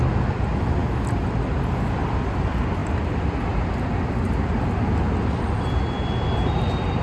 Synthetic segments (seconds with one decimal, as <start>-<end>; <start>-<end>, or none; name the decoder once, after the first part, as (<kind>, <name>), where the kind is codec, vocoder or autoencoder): none